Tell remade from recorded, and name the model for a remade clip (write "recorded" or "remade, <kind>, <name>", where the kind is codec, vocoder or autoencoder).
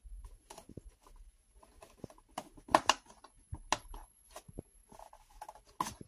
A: recorded